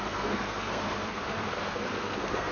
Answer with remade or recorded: remade